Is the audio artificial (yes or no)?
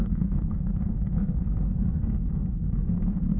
yes